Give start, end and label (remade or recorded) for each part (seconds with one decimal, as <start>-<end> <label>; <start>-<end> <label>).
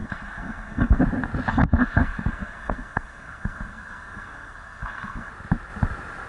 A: 0.0-1.0 remade; 1.0-1.5 recorded; 1.5-5.3 remade; 5.3-6.3 recorded